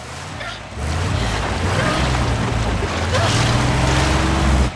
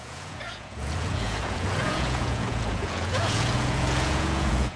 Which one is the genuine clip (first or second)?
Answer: first